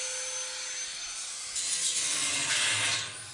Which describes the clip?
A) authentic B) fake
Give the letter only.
A